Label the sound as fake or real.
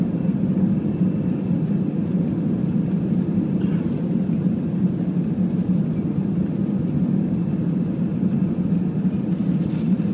real